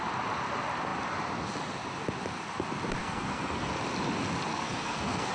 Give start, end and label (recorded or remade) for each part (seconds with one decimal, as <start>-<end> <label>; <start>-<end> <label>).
0.0-3.0 recorded; 3.0-3.7 remade; 3.7-4.5 recorded; 4.5-5.3 remade